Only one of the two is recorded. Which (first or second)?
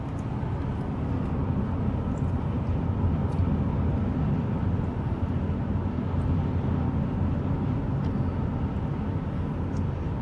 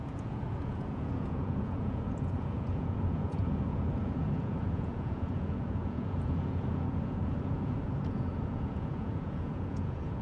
first